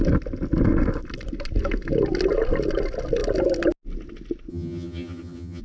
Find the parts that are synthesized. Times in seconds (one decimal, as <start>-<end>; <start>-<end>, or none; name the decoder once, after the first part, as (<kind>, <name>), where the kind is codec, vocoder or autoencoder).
4.5-5.6 (vocoder, HiFi-GAN)